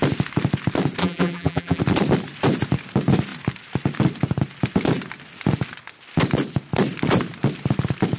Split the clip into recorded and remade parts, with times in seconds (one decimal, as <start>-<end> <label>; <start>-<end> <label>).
0.0-1.0 recorded; 1.0-1.8 remade; 1.8-8.2 recorded

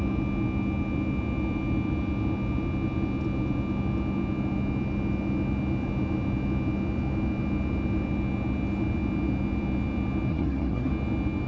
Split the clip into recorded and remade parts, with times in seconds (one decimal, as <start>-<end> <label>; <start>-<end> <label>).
0.0-10.3 recorded; 10.3-10.9 remade; 10.9-11.5 recorded

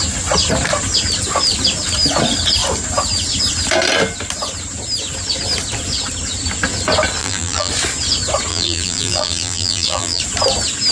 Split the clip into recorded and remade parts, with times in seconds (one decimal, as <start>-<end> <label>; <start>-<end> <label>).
0.0-7.2 recorded; 7.2-7.7 remade; 7.7-8.5 recorded; 8.5-10.2 remade; 10.2-10.9 recorded